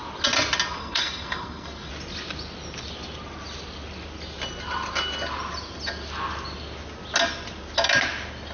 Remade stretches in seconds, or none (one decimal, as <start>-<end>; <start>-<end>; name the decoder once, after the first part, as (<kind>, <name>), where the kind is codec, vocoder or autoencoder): 0.8-1.9 (codec, SNAC)